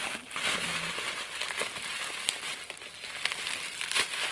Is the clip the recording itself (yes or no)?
yes